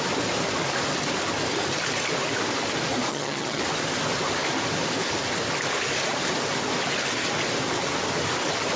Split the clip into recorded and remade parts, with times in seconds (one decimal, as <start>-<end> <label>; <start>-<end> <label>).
0.0-3.1 recorded; 3.1-3.6 remade; 3.6-8.8 recorded